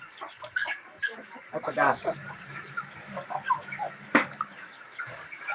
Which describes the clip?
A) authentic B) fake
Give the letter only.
B